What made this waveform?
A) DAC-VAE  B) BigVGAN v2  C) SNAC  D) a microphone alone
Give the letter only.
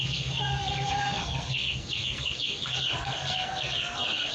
C